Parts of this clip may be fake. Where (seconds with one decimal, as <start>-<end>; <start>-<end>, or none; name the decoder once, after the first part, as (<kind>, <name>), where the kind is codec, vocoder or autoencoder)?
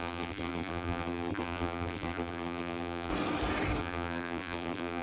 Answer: 0.0-3.1 (vocoder, BigVGAN v2); 3.8-5.0